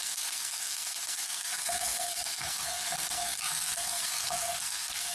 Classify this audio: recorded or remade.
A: remade